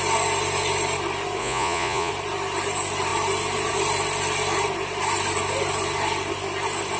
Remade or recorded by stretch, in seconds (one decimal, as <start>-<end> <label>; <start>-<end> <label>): 0.0-1.4 recorded; 1.4-2.1 remade; 2.1-7.0 recorded